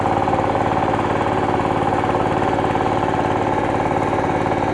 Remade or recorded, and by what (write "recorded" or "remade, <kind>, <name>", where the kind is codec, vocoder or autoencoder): recorded